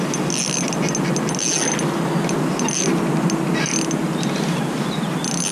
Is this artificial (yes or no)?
no